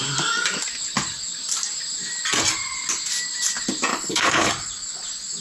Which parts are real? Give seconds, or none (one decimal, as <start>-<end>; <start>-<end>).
0.0-3.9; 4.5-5.4